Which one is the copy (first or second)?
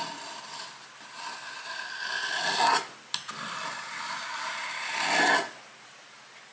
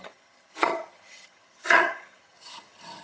second